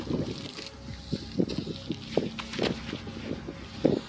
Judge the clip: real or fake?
real